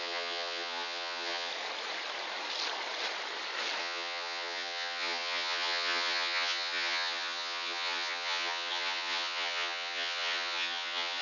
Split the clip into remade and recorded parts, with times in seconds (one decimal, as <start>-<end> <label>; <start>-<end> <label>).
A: 0.0-1.5 remade; 1.5-3.8 recorded; 3.8-11.2 remade